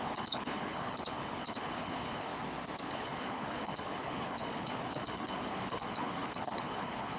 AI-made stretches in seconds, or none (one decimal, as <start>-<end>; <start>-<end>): 0.0-2.3; 2.9-7.2

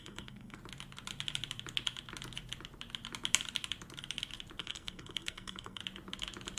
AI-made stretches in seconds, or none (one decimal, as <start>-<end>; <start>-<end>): 0.0-0.6; 4.6-5.8

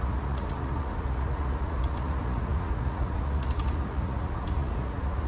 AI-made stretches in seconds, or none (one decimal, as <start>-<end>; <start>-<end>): 0.0-5.3

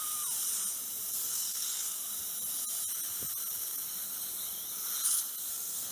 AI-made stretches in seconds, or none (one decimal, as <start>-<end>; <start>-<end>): 1.1-2.0; 5.5-5.9

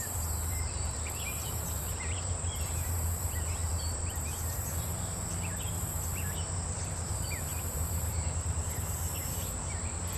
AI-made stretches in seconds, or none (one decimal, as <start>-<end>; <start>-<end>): 0.0-5.7; 6.5-9.4

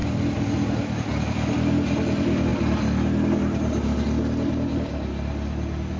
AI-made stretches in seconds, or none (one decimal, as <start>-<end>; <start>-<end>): none